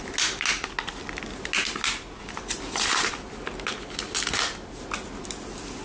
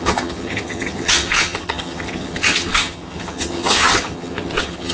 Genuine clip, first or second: first